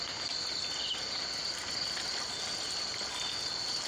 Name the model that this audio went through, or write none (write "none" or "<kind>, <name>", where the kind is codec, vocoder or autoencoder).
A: none